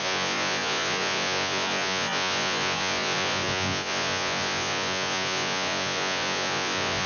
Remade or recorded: remade